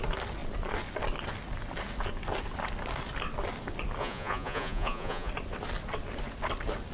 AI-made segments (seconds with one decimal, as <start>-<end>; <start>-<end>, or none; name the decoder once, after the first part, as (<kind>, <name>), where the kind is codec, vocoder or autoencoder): 4.0-5.3 (vocoder, Vocos)